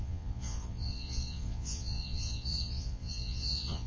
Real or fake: fake